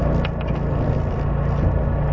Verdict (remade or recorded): recorded